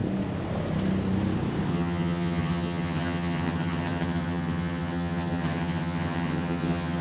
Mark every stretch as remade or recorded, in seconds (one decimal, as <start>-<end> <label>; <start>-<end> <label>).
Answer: 0.0-1.7 recorded; 1.7-7.0 remade